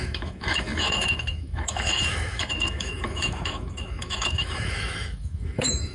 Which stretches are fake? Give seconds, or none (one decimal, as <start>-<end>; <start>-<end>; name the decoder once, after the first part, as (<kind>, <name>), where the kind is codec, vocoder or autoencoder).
0.0-5.9 (autoencoder, DAC-VAE)